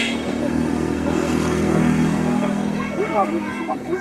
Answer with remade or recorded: remade